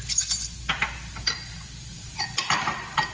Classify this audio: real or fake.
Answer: real